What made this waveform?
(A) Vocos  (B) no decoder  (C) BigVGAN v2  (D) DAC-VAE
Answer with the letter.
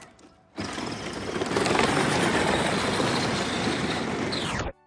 B